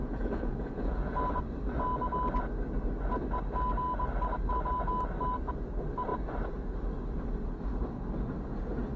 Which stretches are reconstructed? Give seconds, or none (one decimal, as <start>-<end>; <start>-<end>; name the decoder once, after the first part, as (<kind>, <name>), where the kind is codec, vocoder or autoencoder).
0.0-1.2 (vocoder, Vocos)